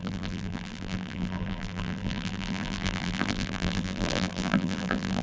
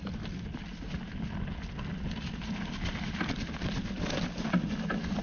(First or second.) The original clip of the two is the second